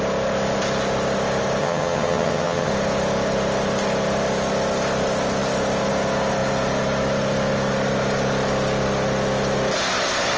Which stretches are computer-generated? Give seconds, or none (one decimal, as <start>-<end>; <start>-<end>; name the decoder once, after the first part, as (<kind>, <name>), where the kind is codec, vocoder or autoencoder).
1.6-2.7 (vocoder, HiFi-GAN)